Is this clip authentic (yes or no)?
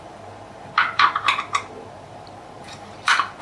no